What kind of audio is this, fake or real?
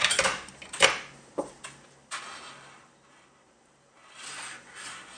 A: real